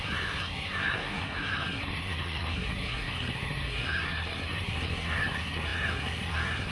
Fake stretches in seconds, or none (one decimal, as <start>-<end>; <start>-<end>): 0.0-6.7